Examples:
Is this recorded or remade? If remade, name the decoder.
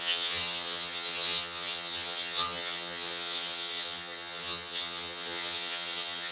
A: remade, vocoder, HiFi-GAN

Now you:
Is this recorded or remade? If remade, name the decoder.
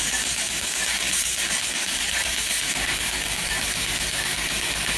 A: remade, codec, DAC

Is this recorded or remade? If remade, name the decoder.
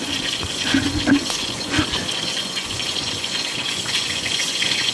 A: remade, vocoder, Vocos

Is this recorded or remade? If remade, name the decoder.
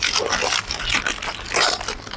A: recorded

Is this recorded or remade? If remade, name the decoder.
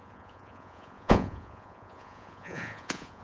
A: remade, vocoder, Vocos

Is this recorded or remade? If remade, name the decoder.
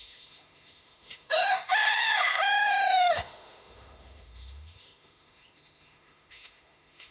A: remade, autoencoder, DAC-VAE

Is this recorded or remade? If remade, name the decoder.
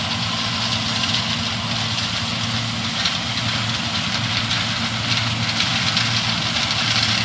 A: recorded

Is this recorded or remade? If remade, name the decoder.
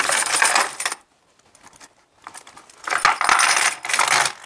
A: recorded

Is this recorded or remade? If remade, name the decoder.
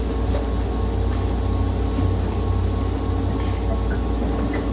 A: recorded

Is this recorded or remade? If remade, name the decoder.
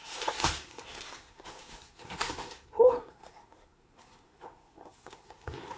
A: remade, codec, SNAC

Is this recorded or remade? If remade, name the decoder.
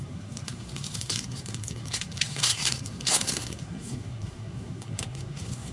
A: remade, codec, SNAC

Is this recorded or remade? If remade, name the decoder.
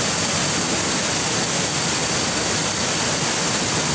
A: recorded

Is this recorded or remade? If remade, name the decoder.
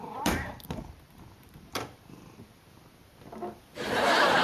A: remade, vocoder, BigVGAN v2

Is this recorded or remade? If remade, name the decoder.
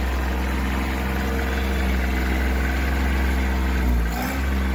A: recorded